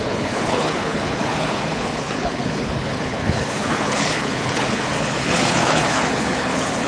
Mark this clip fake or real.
fake